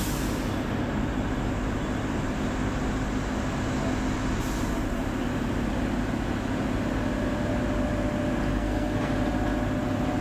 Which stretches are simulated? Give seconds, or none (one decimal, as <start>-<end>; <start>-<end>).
8.5-9.1